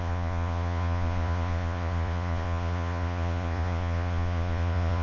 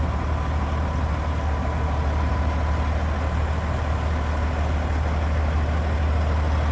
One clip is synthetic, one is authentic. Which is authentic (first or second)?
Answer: second